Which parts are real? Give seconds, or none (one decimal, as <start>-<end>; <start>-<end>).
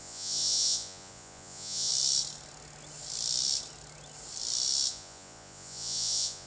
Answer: 1.9-4.9